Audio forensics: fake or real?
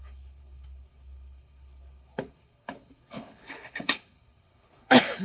fake